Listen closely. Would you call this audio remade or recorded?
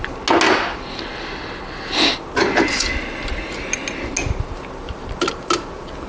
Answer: recorded